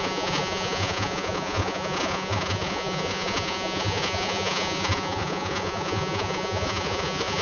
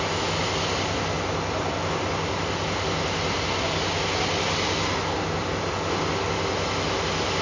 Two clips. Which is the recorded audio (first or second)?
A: second